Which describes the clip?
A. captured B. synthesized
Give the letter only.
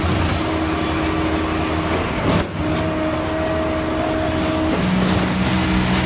A